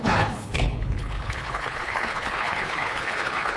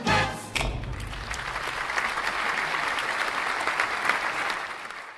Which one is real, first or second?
second